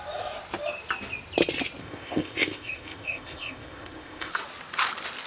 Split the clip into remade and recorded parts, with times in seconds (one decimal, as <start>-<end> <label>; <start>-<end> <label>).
0.0-1.8 recorded; 1.8-4.3 remade; 4.3-5.3 recorded